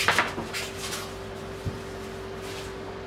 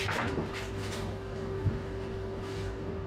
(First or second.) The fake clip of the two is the second